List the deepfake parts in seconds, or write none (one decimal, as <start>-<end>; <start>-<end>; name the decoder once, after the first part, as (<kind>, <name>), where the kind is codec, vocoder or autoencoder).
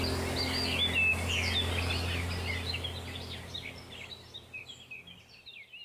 none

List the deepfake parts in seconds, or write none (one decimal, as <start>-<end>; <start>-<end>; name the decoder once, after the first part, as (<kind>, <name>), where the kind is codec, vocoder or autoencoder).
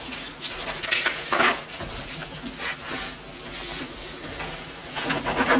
0.0-2.2 (vocoder, Vocos); 3.8-5.6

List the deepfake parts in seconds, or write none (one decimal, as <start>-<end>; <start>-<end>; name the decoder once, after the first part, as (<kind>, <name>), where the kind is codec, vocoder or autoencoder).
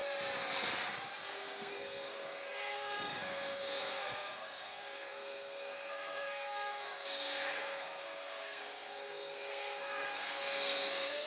1.3-11.3 (codec, SNAC)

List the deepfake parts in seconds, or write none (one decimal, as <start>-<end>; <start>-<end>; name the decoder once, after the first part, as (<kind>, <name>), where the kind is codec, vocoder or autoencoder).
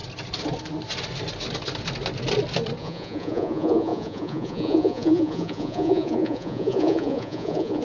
2.8-7.8 (vocoder, Vocos)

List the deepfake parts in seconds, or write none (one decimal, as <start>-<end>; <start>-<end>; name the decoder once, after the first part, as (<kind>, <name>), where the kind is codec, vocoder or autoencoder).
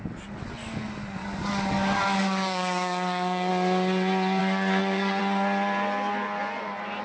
1.2-3.5 (codec, DAC); 4.4-5.2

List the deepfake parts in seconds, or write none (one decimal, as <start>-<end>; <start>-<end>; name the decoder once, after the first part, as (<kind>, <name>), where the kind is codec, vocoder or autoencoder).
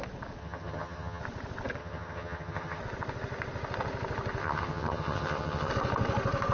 0.4-1.2 (vocoder, HiFi-GAN); 1.8-2.8; 4.4-5.7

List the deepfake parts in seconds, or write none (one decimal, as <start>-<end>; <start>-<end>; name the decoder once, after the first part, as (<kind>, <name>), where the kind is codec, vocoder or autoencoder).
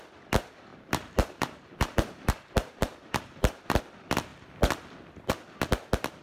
0.7-3.8 (vocoder, BigVGAN v2)